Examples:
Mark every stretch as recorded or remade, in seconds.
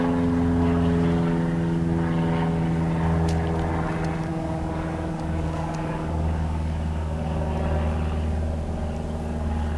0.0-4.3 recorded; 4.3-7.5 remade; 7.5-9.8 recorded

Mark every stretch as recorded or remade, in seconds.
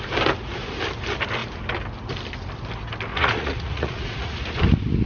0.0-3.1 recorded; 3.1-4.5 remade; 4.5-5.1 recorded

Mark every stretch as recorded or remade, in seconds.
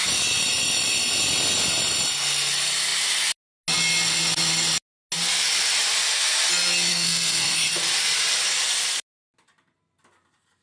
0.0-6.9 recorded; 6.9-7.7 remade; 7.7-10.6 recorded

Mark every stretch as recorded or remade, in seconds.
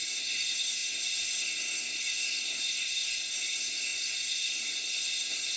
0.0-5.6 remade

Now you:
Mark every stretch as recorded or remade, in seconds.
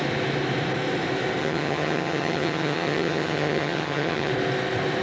0.0-1.4 recorded; 1.4-4.3 remade; 4.3-5.0 recorded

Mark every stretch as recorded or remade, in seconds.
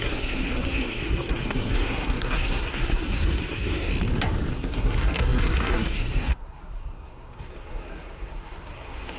0.0-3.9 remade; 3.9-4.5 recorded; 4.5-9.2 remade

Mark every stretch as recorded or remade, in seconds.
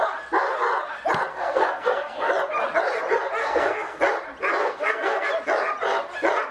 0.0-1.3 recorded; 1.3-2.3 remade; 2.3-3.4 recorded; 3.4-4.0 remade; 4.0-4.6 recorded; 4.6-5.3 remade; 5.3-6.5 recorded